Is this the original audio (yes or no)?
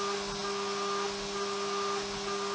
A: yes